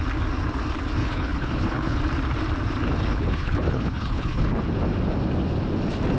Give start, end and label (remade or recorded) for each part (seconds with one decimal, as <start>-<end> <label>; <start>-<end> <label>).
0.0-1.0 recorded; 1.0-2.0 remade; 2.0-3.0 recorded; 3.0-4.6 remade; 4.6-6.2 recorded